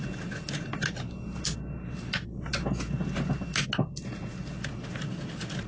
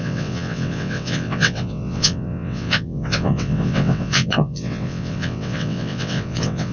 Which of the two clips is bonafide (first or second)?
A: first